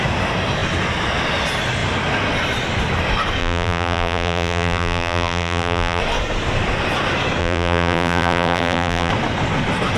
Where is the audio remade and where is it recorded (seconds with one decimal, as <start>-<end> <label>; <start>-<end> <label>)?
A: 0.0-3.4 recorded; 3.4-6.0 remade; 6.0-7.4 recorded; 7.4-9.1 remade; 9.1-10.0 recorded